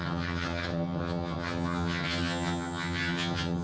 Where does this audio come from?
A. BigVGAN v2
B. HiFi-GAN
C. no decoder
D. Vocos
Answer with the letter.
B